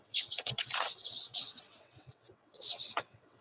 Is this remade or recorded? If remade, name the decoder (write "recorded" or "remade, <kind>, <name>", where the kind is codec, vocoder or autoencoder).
remade, vocoder, WaveNeXt